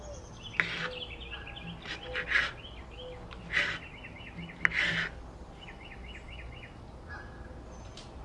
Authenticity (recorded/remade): recorded